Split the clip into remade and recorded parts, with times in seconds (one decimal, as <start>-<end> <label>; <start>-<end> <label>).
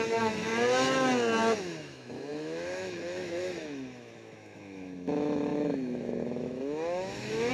0.0-0.5 remade; 0.5-1.6 recorded; 1.6-7.5 remade